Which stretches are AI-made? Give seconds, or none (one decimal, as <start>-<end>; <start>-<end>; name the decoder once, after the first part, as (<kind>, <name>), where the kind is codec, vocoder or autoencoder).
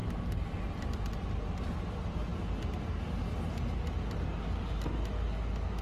none